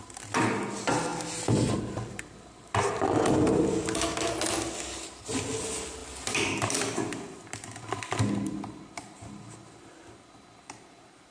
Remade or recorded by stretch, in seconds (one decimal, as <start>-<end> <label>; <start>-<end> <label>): 0.0-11.3 recorded